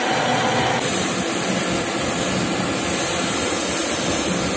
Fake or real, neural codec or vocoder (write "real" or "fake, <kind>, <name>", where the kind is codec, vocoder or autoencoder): real